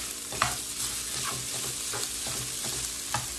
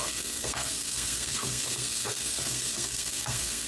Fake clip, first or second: second